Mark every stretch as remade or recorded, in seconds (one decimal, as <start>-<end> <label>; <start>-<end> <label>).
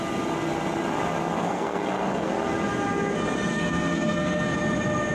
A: 0.0-1.4 recorded; 1.4-2.3 remade; 2.3-3.5 recorded; 3.5-4.5 remade; 4.5-5.1 recorded